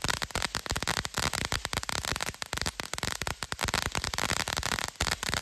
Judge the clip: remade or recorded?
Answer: recorded